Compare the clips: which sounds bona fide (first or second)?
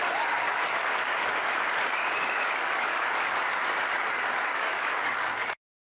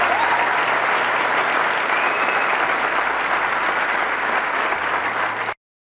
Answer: second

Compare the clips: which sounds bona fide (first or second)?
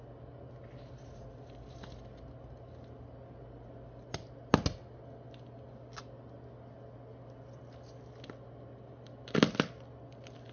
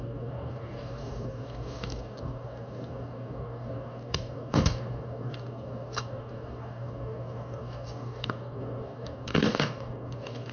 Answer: first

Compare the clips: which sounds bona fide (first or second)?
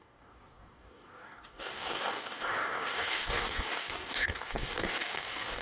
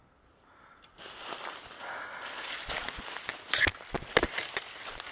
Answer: second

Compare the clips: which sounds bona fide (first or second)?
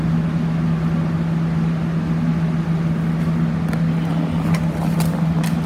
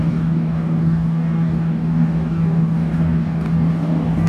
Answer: first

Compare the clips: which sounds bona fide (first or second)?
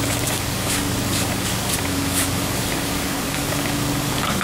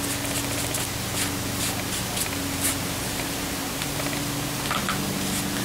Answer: second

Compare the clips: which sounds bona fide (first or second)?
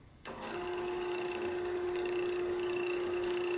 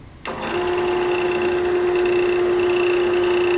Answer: second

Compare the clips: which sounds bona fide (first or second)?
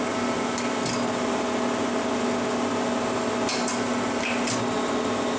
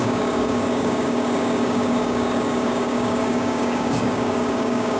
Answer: first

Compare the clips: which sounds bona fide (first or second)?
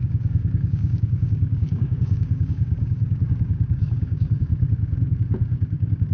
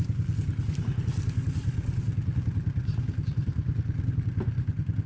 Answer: second